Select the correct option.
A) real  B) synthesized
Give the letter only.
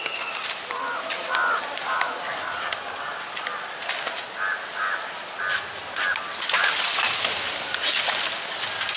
A